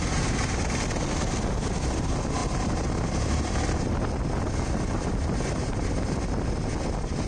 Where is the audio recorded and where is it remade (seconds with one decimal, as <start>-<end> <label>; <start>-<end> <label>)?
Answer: 0.0-2.4 recorded; 2.4-3.9 remade; 3.9-7.3 recorded